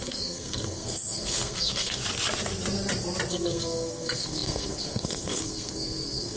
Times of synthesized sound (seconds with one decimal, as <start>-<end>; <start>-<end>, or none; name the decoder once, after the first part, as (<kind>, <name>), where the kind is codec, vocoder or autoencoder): 0.0-2.0 (codec, SNAC); 3.3-6.4